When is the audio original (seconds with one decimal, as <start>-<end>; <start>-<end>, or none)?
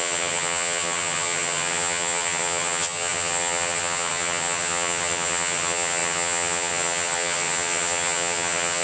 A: none